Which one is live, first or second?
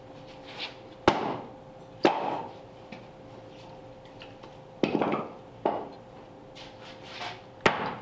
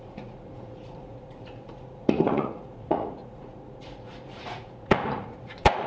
first